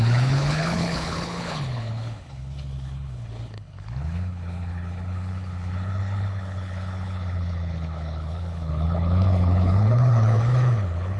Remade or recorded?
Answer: remade